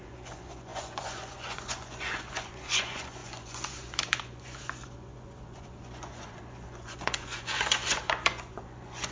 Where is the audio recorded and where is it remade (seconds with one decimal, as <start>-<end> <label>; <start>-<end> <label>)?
0.0-9.1 remade